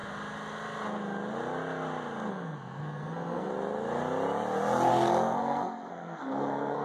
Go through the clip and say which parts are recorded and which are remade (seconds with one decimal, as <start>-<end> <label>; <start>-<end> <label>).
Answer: 0.0-2.3 recorded; 2.3-3.5 remade; 3.5-4.9 recorded; 4.9-6.8 remade